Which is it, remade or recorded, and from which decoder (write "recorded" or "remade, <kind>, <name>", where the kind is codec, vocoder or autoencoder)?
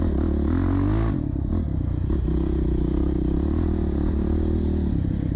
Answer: recorded